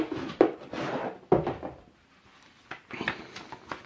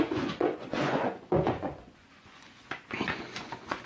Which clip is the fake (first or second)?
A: second